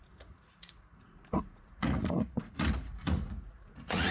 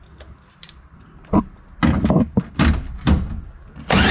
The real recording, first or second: second